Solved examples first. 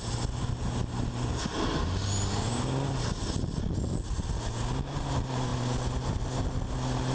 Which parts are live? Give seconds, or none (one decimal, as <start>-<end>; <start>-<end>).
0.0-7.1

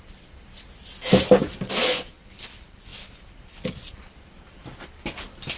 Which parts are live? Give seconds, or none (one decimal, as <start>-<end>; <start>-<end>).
0.0-1.8; 2.3-5.6

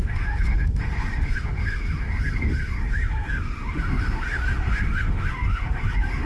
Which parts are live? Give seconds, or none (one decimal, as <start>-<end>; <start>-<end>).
none

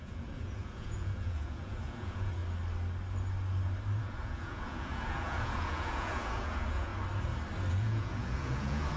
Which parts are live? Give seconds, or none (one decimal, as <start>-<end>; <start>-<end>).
2.4-4.0; 6.9-7.7

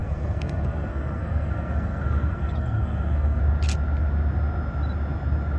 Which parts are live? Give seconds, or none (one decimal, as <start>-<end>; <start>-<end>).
3.4-5.6

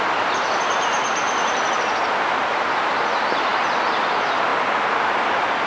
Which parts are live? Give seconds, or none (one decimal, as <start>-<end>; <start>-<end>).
0.0-5.7